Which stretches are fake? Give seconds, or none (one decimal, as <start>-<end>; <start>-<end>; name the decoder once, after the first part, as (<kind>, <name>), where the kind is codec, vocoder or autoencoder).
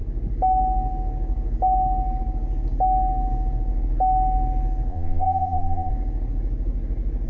4.9-5.9 (vocoder, Vocos)